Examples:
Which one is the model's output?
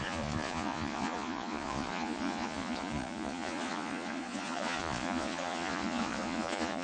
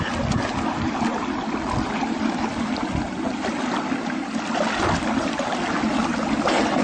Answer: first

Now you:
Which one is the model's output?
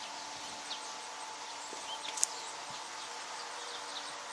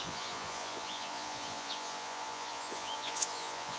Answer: second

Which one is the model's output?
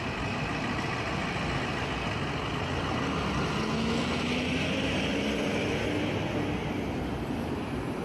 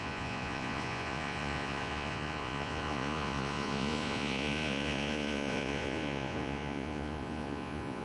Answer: second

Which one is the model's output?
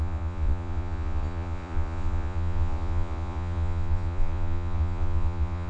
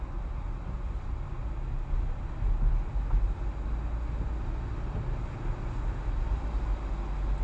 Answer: first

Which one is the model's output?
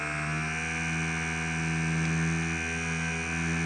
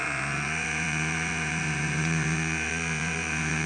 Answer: second